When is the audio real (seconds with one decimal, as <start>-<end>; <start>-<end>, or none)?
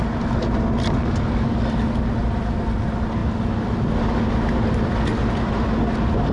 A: 0.0-6.3